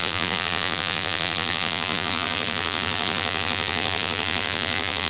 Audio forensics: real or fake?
fake